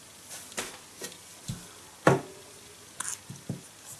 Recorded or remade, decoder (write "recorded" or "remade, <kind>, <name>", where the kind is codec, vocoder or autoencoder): recorded